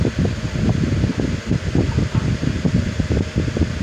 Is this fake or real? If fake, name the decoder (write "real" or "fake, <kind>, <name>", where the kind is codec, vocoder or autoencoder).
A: real